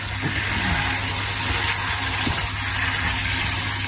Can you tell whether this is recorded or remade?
recorded